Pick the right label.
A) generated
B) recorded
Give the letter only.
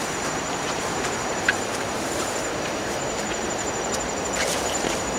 A